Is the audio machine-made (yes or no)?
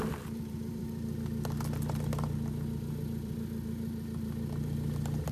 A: yes